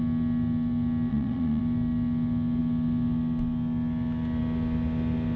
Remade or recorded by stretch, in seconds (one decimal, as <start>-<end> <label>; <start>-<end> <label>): 0.0-1.1 recorded; 1.1-1.6 remade; 1.6-5.4 recorded